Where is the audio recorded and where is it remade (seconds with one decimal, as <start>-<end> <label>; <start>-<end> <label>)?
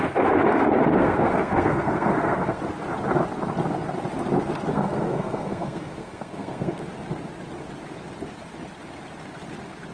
0.0-0.9 recorded; 0.9-2.6 remade; 2.6-4.7 recorded; 4.7-6.8 remade; 6.8-9.9 recorded